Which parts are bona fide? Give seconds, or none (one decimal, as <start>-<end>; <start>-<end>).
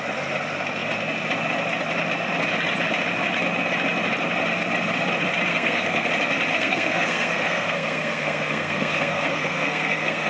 0.0-5.5; 6.1-6.5